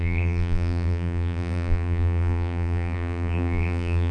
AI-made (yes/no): yes